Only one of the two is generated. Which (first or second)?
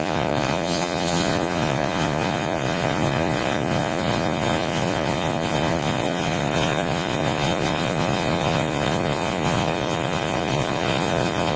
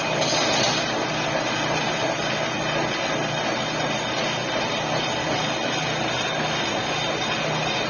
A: first